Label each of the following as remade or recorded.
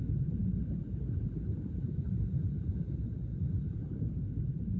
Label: recorded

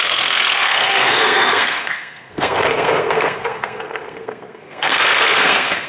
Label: remade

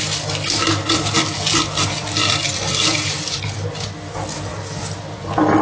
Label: recorded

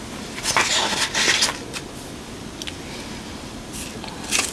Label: recorded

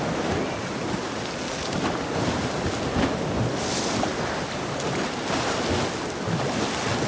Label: recorded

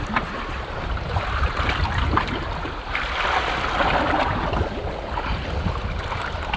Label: recorded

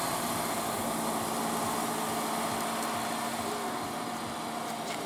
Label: recorded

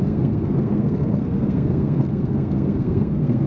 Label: remade